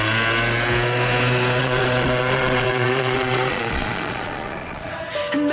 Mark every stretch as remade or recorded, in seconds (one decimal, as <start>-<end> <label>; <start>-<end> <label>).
0.0-1.6 recorded; 1.6-4.9 remade; 4.9-5.5 recorded